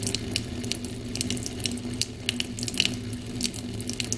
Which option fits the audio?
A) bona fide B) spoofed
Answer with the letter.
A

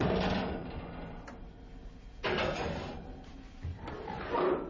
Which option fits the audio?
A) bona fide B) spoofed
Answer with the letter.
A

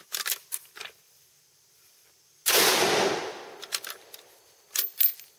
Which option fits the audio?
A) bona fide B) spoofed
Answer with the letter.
A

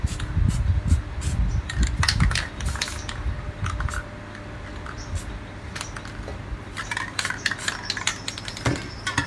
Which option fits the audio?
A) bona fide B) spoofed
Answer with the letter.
A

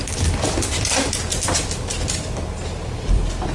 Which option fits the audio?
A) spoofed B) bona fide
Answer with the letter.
A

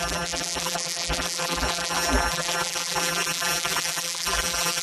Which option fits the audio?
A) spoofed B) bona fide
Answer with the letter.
A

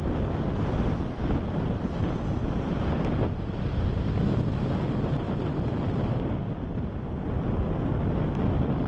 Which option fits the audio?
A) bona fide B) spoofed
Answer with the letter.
A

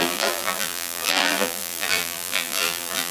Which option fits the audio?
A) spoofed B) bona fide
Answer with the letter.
A